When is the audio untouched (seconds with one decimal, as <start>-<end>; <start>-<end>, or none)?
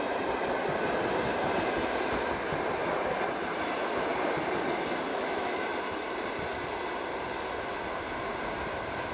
0.0-5.1; 5.7-9.1